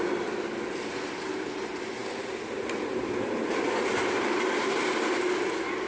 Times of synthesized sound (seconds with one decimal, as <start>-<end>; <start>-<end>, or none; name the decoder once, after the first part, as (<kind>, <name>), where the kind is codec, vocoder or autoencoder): none